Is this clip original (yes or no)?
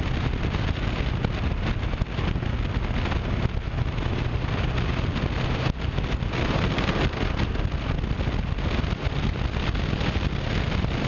yes